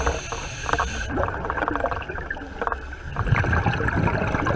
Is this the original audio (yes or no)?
yes